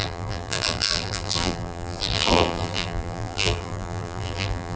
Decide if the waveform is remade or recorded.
remade